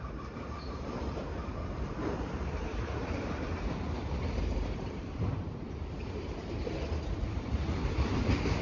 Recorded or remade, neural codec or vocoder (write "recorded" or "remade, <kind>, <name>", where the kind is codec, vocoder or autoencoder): remade, vocoder, BigVGAN v2